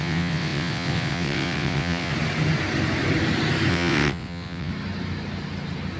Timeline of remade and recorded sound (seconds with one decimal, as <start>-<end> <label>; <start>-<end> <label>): 0.0-2.1 remade; 2.1-3.7 recorded; 3.7-4.7 remade; 4.7-6.0 recorded